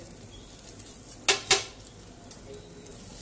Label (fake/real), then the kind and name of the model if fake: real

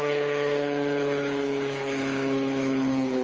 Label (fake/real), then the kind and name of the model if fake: fake, codec, HILCodec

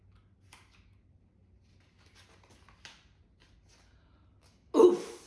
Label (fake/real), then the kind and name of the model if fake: real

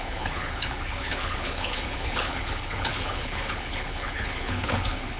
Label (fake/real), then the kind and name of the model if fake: fake, codec, HILCodec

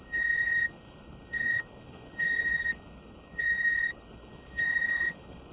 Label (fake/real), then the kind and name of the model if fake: fake, codec, HILCodec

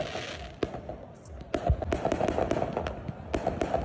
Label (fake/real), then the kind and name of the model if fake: real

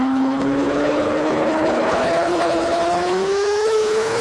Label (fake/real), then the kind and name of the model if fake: fake, codec, HILCodec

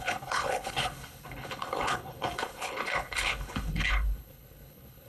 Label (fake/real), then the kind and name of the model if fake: fake, codec, HILCodec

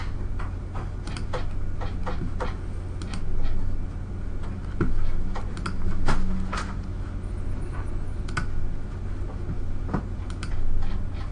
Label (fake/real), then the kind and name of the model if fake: real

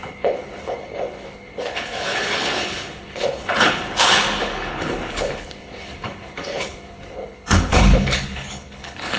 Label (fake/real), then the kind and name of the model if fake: fake, codec, HILCodec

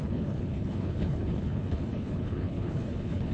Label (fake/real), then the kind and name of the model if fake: fake, codec, HILCodec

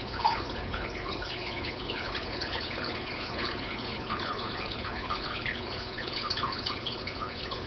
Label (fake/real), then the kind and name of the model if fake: fake, codec, HILCodec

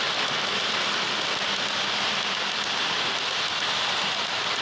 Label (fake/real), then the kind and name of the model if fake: real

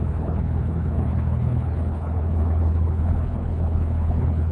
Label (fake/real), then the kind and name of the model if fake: fake, codec, HILCodec